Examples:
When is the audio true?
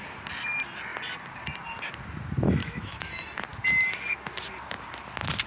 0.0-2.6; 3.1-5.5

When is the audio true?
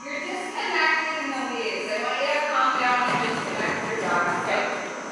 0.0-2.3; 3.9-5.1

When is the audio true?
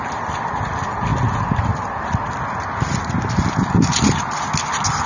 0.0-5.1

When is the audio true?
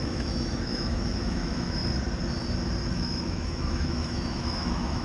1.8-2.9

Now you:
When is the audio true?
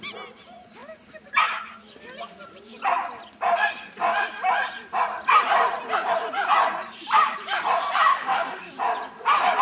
0.0-8.1; 8.6-9.6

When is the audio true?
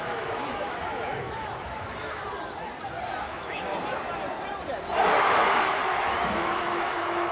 2.2-3.2; 3.7-5.1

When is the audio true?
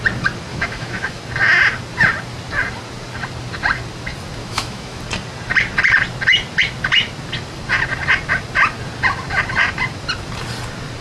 0.0-0.5; 1.2-4.4; 5.0-11.0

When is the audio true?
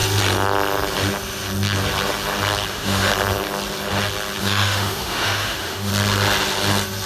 0.0-2.7; 3.1-4.4; 5.9-7.1